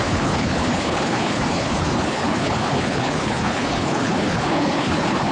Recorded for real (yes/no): no